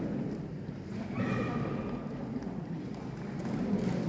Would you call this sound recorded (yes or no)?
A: yes